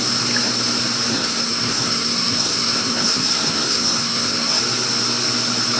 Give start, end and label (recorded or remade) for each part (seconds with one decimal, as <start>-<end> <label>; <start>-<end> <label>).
0.0-1.1 recorded; 1.1-4.6 remade; 4.6-5.8 recorded